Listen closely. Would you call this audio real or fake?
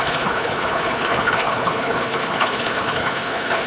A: fake